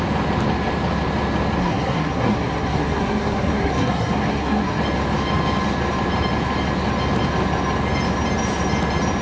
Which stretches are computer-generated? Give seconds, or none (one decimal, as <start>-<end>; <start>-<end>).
1.6-4.8